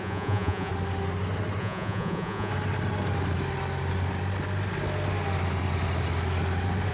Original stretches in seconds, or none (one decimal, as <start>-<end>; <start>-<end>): 0.7-1.6; 2.5-6.9

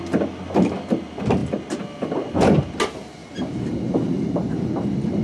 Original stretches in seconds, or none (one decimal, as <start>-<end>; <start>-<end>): 0.0-3.2

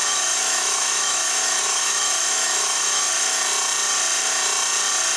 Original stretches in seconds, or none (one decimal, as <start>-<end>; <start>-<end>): 3.1-5.2

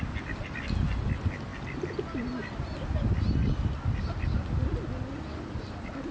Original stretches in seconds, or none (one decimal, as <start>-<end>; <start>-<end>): 0.0-6.1

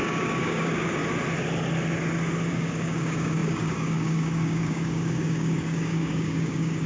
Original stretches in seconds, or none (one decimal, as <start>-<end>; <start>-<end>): 1.0-2.5

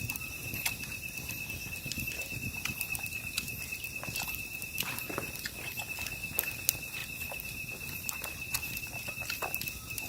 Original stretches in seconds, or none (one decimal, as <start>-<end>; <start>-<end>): 0.0-10.1